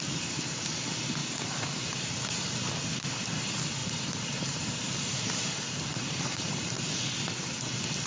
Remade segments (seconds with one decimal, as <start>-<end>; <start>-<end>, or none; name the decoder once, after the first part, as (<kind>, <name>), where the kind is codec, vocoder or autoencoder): 1.2-1.9 (vocoder, BigVGAN v2); 3.8-6.7